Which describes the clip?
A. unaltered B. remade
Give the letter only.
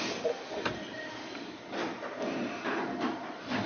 A